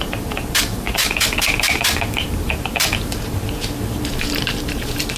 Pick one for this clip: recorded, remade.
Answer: remade